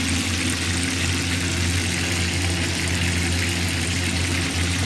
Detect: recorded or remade recorded